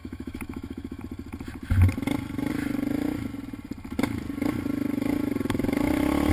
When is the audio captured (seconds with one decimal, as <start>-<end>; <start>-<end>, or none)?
1.0-6.3